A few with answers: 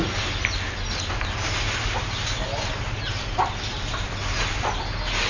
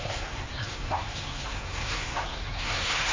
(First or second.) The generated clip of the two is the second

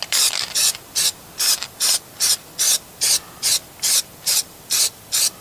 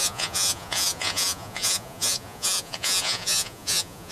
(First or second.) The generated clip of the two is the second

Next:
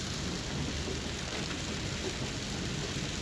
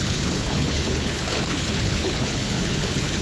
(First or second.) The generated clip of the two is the second